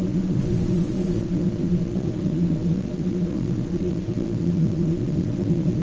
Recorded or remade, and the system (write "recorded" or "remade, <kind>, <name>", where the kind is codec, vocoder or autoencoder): remade, vocoder, WaveNeXt